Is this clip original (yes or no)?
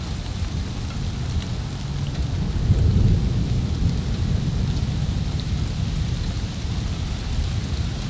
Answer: yes